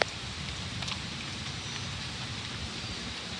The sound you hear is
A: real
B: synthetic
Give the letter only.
B